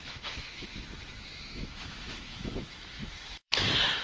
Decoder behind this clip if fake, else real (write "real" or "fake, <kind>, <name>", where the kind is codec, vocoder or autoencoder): fake, autoencoder, DAC-VAE